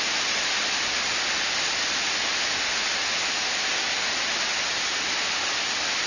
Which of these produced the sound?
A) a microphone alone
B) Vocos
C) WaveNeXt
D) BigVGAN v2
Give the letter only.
A